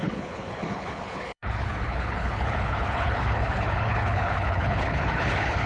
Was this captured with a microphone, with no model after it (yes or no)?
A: no